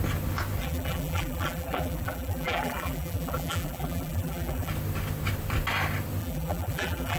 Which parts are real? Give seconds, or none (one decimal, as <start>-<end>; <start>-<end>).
0.0-0.6; 4.7-6.2